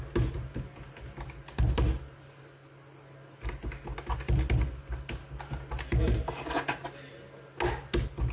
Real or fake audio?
real